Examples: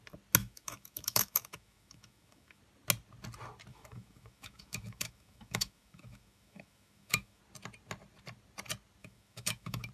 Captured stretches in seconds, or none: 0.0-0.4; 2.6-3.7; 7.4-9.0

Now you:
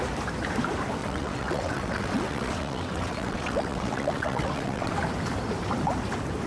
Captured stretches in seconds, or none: 0.0-1.0; 4.9-6.5

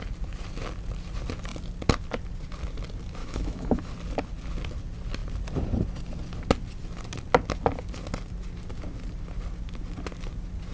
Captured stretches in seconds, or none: 0.0-3.2; 3.9-10.7

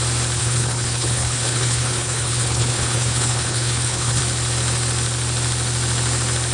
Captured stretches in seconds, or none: 0.0-0.4; 4.2-6.5

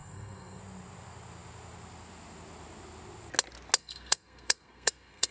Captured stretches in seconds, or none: 0.6-3.8

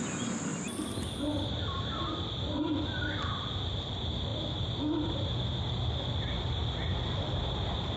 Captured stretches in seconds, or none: 0.0-8.0

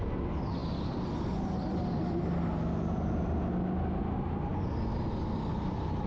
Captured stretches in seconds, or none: 0.0-6.1

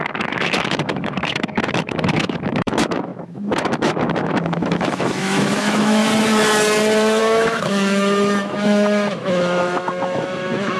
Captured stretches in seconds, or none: 6.0-7.2